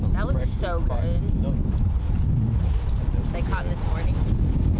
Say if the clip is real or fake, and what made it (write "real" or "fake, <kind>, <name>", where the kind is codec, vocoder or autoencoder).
real